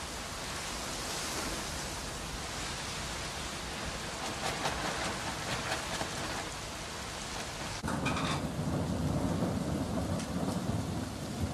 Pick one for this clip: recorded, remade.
recorded